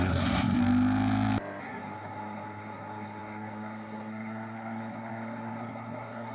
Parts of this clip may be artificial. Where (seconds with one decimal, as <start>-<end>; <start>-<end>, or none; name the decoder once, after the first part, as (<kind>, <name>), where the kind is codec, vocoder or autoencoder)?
0.0-0.6 (codec, SNAC); 1.6-6.3